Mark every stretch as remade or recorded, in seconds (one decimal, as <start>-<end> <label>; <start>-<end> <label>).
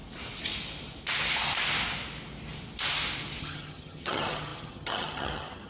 0.0-3.4 recorded; 3.4-5.7 remade